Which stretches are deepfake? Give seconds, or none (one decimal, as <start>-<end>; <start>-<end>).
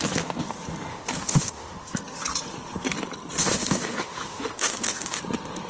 0.9-2.0; 3.4-5.2